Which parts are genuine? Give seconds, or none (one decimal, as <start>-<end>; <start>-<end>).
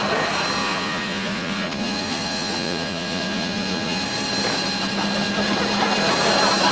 0.0-0.6; 4.0-6.7